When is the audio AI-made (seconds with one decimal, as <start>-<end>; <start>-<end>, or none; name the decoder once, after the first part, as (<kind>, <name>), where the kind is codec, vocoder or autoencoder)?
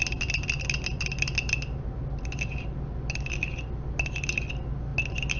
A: none